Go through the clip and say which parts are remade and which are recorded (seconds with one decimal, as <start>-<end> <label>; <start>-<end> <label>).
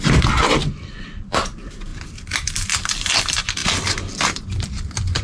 0.0-3.6 remade; 3.6-4.4 recorded; 4.4-5.2 remade